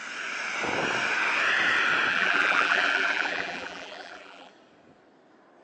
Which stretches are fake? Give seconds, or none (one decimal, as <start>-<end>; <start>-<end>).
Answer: 2.1-4.5